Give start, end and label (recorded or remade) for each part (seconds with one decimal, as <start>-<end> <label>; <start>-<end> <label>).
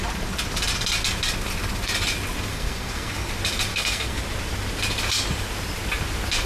0.0-2.5 recorded; 2.5-3.3 remade; 3.3-3.7 recorded; 3.7-4.2 remade; 4.2-6.5 recorded